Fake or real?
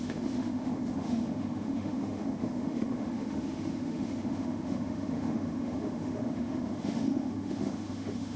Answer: fake